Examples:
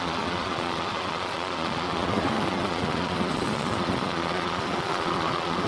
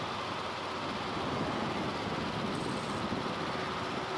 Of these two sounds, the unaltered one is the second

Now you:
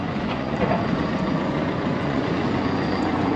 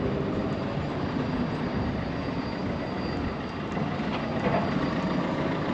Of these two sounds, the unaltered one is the second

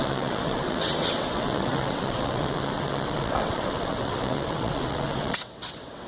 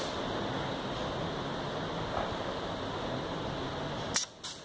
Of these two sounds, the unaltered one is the second